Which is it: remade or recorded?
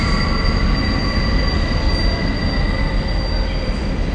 recorded